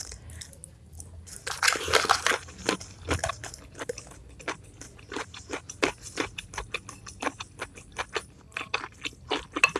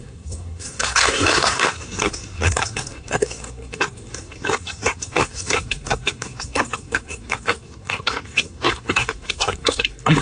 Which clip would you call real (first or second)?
first